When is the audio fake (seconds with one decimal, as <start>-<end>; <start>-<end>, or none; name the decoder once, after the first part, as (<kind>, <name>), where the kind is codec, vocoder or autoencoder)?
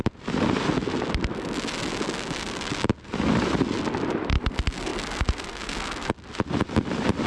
none